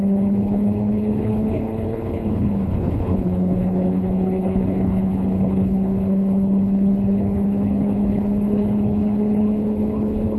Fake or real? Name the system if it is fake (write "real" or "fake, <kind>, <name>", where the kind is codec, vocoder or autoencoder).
fake, codec, HILCodec